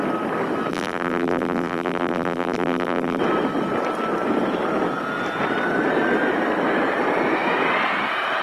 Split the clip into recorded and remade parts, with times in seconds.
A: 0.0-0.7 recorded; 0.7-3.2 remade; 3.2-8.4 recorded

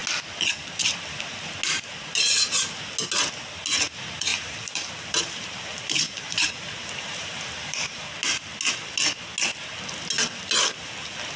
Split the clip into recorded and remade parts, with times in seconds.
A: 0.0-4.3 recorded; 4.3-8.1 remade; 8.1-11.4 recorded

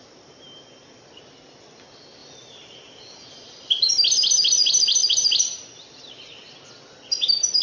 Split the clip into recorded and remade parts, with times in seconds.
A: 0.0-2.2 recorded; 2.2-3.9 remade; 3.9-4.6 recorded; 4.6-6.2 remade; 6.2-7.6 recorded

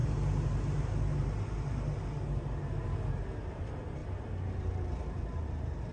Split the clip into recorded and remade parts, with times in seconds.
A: 0.0-3.5 recorded; 3.5-4.0 remade; 4.0-4.9 recorded; 4.9-5.9 remade

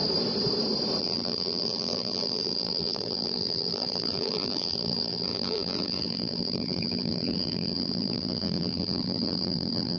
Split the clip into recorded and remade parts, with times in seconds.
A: 0.0-1.0 recorded; 1.0-10.0 remade